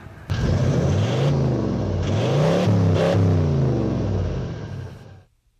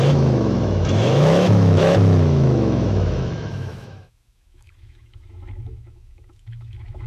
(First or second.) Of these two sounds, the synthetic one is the second